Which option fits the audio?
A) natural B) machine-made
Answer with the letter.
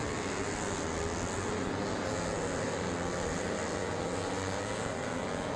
A